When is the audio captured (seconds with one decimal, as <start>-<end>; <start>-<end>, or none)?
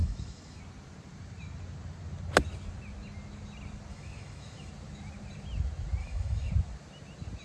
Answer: 0.6-3.9; 4.7-6.0; 6.5-7.4